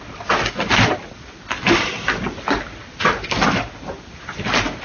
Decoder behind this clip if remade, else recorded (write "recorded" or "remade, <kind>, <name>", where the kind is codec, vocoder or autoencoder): recorded